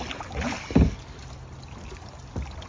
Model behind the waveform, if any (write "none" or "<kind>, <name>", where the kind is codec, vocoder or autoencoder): none